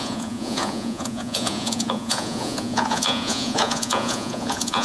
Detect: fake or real fake